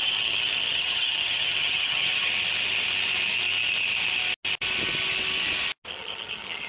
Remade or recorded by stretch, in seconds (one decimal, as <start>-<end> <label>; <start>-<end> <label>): 0.0-2.3 remade; 2.3-5.9 recorded; 5.9-6.7 remade